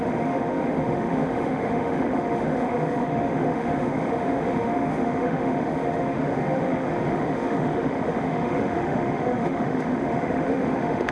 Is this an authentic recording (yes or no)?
no